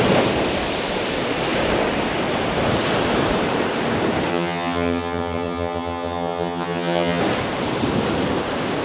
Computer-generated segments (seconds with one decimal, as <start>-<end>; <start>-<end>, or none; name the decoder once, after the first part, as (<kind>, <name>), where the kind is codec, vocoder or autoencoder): 4.3-7.2 (vocoder, HiFi-GAN)